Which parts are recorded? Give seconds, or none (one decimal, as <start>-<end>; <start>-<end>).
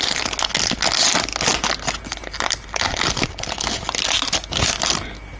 0.0-5.4